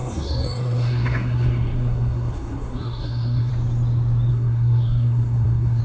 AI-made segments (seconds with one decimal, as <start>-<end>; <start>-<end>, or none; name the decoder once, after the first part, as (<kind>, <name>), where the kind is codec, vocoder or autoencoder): 0.0-3.5 (codec, SNAC); 4.3-5.8